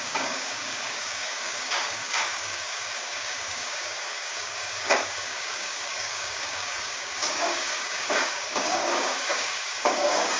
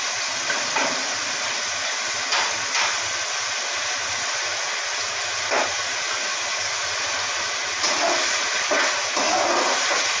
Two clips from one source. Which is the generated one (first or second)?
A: first